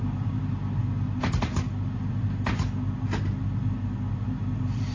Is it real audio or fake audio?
real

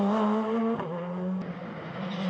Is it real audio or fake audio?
real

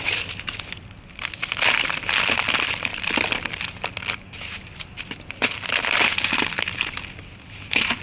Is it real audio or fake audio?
real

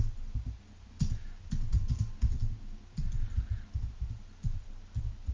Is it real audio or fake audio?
real